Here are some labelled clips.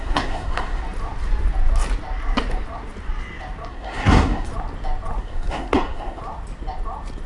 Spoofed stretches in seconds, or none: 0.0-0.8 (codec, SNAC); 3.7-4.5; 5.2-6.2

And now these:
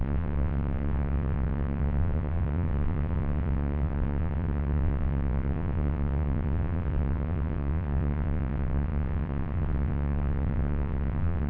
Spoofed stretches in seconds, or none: 0.0-11.5 (vocoder, WaveNeXt)

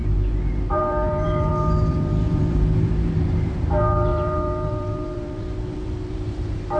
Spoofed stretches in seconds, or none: 0.7-6.8 (vocoder, BigVGAN v2)

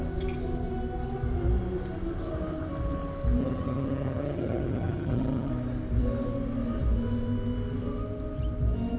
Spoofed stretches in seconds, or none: 3.4-5.5 (vocoder, HiFi-GAN)

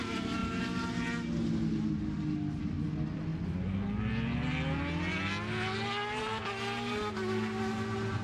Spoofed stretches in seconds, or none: none

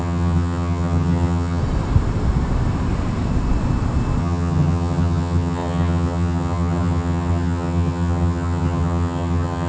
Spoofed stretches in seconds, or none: 0.0-1.6 (vocoder, HiFi-GAN); 4.2-9.7

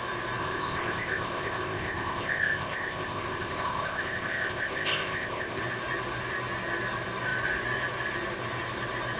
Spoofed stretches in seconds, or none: 0.4-5.6 (codec, ZipCodec)

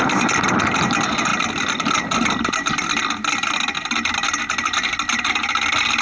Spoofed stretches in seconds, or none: none